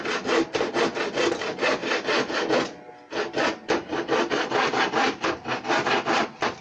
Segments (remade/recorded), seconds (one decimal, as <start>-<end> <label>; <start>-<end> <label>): 0.0-6.6 recorded

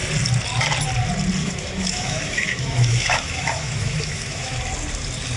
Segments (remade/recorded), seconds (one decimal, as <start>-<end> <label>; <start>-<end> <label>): 0.0-1.4 recorded; 1.4-4.6 remade; 4.6-5.4 recorded

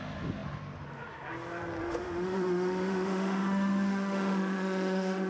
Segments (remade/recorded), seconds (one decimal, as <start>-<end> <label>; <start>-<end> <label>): 0.0-1.8 recorded; 1.8-5.3 remade

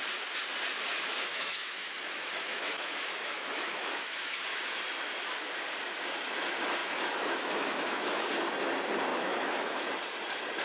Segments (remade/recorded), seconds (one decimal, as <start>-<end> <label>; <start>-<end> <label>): 0.0-1.3 recorded; 1.3-4.6 remade; 4.6-6.8 recorded; 6.8-8.3 remade; 8.3-9.1 recorded; 9.1-9.9 remade; 9.9-10.6 recorded

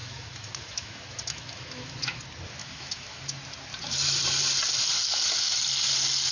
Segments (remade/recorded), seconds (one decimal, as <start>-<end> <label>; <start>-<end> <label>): 0.0-2.2 remade; 2.2-2.6 recorded; 2.6-3.2 remade; 3.2-6.3 recorded